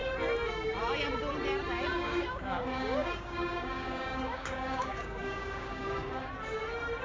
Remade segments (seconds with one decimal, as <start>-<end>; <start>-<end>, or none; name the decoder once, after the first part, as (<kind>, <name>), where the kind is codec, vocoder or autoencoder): 1.9-6.1 (codec, DAC)